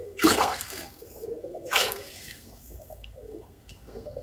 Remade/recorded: remade